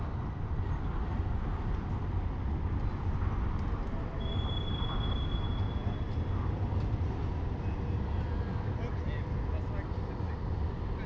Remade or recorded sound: recorded